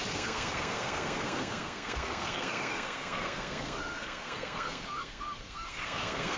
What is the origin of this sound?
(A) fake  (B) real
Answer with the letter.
A